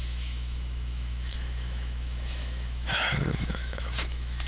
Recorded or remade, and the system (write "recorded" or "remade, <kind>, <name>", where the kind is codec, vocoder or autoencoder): remade, autoencoder, DAC-VAE